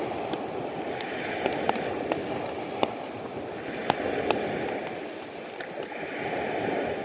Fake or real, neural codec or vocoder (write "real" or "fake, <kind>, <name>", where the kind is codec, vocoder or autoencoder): real